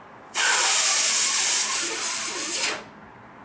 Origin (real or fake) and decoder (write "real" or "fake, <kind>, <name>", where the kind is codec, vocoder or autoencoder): real